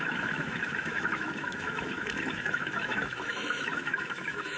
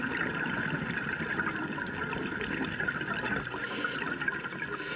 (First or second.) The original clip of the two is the second